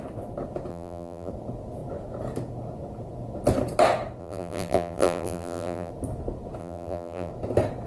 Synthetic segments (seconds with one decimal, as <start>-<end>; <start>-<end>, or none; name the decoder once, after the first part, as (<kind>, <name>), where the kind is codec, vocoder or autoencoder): 0.7-1.3 (vocoder, BigVGAN v2); 4.2-5.9; 6.6-7.3